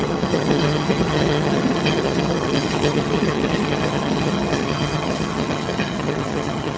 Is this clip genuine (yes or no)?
no